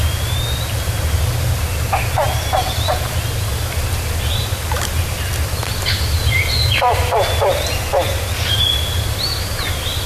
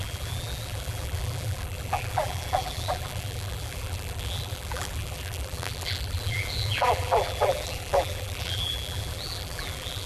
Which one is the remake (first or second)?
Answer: second